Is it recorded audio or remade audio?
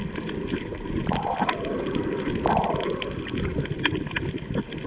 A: recorded